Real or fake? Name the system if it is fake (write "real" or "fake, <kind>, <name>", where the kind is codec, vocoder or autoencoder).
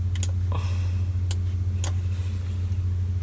real